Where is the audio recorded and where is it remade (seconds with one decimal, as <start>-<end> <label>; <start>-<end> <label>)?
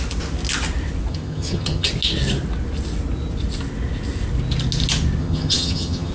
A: 0.0-1.1 recorded; 1.1-1.9 remade; 1.9-5.2 recorded; 5.2-6.1 remade